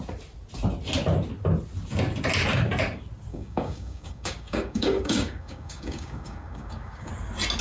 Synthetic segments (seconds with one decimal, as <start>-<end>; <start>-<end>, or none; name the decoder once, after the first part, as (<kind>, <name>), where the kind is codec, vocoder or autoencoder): 3.3-7.1 (codec, DAC)